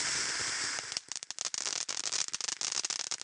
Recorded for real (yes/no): yes